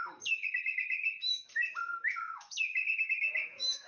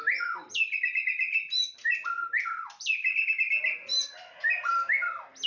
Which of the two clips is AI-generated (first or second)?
first